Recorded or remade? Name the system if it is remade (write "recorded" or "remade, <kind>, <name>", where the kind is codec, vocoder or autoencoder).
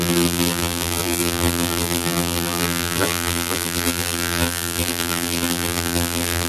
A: remade, vocoder, BigVGAN v2